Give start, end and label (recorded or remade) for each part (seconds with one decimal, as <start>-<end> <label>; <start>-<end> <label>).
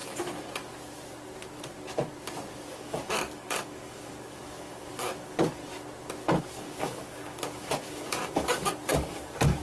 0.0-2.7 recorded; 2.7-5.6 remade; 5.6-6.4 recorded; 6.4-9.6 remade